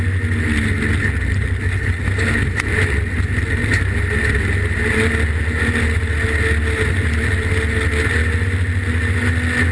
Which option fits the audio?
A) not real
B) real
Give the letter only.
B